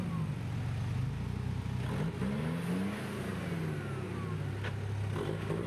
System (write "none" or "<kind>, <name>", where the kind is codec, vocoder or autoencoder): none